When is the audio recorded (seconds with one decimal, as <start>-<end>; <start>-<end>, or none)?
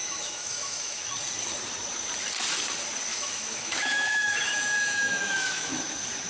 1.0-3.1; 5.8-6.3